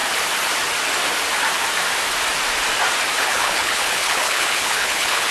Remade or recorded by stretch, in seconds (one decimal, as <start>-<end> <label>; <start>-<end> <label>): 0.0-3.2 recorded; 3.2-5.3 remade